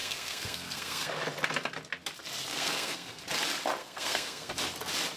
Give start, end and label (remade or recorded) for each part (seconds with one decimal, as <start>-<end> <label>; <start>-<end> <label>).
0.0-1.1 remade; 1.1-2.5 recorded; 2.5-3.2 remade; 3.2-3.8 recorded; 3.8-4.5 remade; 4.5-5.2 recorded